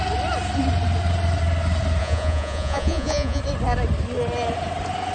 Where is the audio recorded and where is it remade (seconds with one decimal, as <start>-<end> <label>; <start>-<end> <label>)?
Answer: 0.0-2.0 recorded; 2.0-3.4 remade; 3.4-5.1 recorded